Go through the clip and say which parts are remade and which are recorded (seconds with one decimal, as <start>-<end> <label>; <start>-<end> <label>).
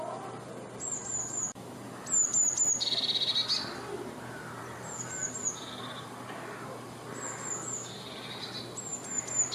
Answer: 0.0-9.5 recorded